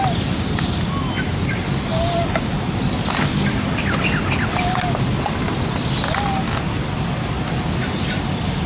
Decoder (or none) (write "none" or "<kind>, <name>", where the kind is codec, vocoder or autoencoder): none